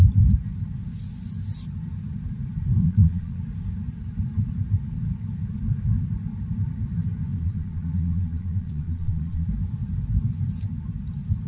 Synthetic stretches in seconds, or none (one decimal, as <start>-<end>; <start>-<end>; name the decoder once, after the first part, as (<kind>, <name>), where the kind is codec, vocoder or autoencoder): 2.8-3.4 (vocoder, Vocos); 7.3-9.5